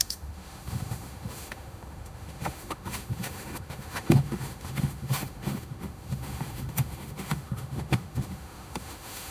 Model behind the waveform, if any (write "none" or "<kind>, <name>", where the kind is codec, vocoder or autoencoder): autoencoder, DAC-VAE